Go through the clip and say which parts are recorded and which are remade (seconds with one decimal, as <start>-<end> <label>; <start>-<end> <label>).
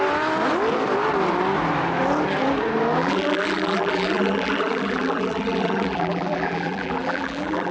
0.0-3.0 recorded; 3.0-7.7 remade